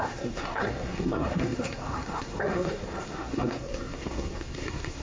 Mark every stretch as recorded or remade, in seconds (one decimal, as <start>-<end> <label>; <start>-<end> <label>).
0.0-5.0 remade